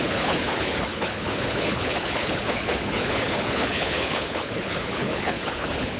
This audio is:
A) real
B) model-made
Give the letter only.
B